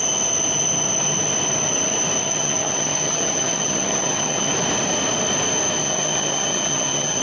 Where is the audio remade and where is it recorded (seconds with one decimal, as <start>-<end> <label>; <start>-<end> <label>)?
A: 0.0-2.2 recorded; 2.2-4.5 remade; 4.5-5.8 recorded; 5.8-7.2 remade